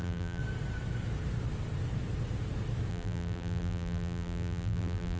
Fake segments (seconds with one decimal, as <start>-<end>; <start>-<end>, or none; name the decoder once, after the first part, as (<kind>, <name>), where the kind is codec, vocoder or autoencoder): 0.0-0.4 (vocoder, BigVGAN v2); 2.9-5.2

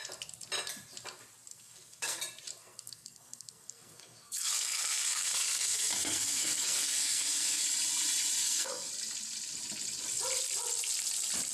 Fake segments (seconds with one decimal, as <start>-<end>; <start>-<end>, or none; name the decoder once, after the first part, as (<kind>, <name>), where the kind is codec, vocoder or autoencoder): 1.5-2.2 (codec, SNAC); 2.6-7.6; 8.4-8.9